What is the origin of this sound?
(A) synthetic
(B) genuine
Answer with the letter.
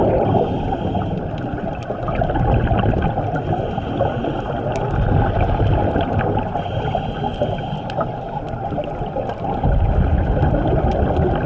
B